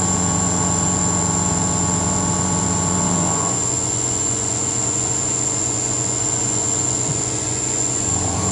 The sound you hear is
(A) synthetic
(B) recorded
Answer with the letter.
A